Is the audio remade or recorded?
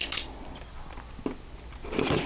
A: recorded